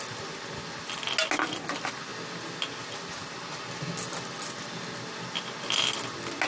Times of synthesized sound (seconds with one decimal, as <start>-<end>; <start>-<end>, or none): none